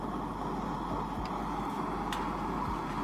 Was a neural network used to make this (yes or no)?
no